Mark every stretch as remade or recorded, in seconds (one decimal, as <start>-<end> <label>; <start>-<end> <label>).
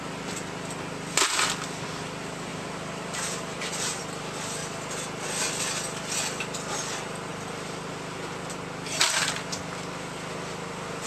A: 0.0-2.5 recorded; 2.5-4.0 remade; 4.0-11.1 recorded